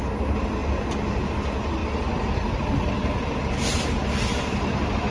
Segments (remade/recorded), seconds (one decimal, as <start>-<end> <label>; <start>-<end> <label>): 0.0-5.1 recorded